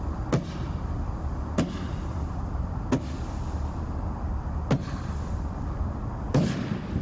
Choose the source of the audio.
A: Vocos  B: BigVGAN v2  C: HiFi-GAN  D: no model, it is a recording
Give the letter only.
D